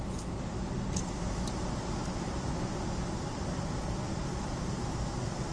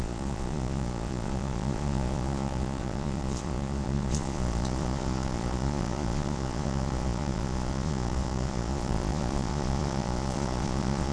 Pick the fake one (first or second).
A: second